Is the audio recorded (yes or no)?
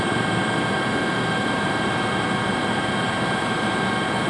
yes